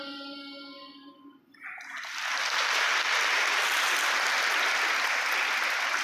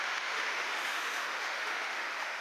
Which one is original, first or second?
first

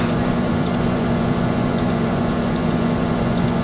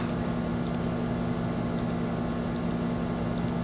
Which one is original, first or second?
second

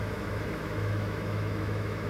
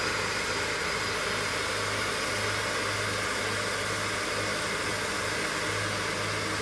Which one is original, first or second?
second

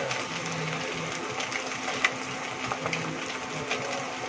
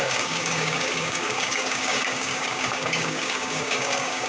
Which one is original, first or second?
first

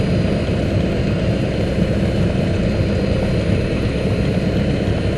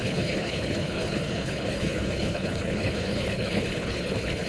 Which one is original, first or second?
first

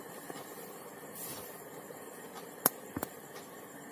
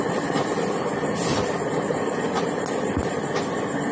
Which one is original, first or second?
second